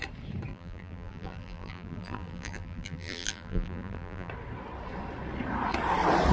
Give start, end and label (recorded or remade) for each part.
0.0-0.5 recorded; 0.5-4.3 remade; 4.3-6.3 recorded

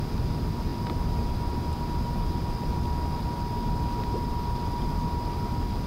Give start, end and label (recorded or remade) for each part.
0.0-5.9 recorded